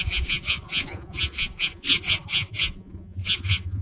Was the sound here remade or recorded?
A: remade